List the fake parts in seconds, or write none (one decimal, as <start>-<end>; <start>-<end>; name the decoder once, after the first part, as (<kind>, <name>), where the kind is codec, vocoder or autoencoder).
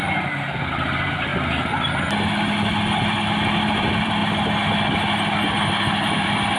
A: 0.0-1.3 (vocoder, BigVGAN v2); 3.7-4.2; 5.9-6.6